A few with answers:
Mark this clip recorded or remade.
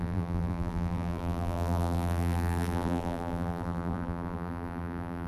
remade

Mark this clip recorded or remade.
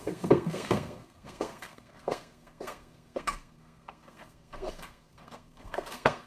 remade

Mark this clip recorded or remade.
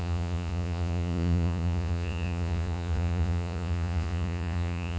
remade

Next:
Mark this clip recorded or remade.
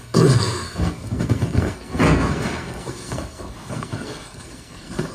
remade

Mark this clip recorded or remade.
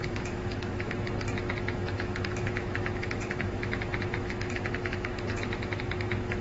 remade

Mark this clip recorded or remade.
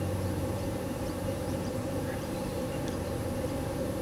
remade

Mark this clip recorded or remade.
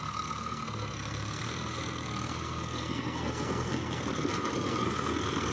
remade